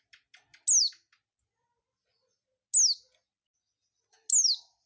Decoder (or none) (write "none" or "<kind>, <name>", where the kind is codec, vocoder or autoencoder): none